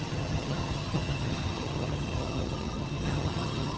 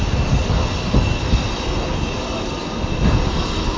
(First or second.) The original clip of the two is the second